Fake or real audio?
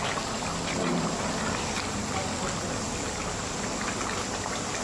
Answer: real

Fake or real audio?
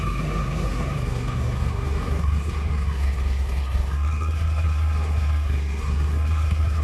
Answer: fake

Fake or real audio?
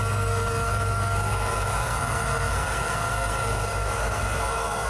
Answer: fake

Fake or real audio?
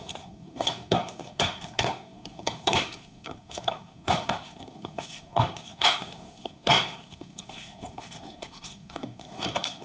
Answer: fake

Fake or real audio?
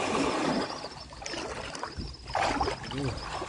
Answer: real